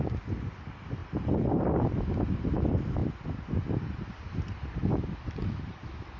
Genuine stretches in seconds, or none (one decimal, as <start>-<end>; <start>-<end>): 1.0-2.5; 3.0-3.7